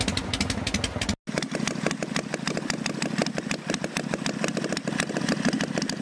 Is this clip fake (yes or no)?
no